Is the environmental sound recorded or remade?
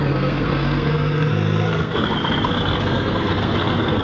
remade